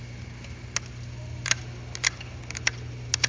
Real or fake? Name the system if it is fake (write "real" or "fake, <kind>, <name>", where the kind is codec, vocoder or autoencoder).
real